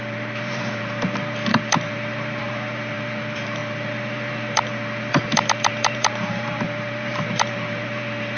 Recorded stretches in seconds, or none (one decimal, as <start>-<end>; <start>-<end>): none